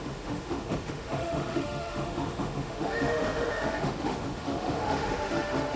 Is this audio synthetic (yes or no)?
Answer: yes